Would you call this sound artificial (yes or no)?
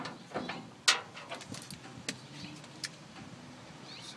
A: no